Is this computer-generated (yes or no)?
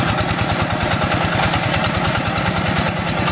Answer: no